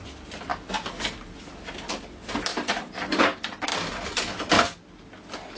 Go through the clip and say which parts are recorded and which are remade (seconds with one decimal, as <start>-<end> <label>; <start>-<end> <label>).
0.0-0.5 recorded; 0.5-1.9 remade; 1.9-2.5 recorded; 2.5-3.2 remade; 3.2-5.6 recorded